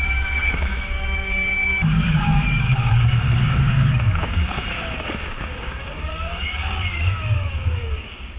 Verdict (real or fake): fake